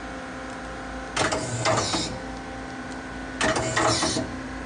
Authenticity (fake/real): real